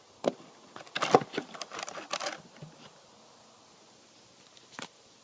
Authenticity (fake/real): real